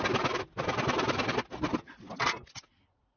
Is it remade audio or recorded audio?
recorded